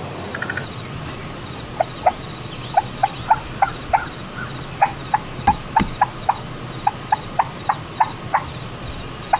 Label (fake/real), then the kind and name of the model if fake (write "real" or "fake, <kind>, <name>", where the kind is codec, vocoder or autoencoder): real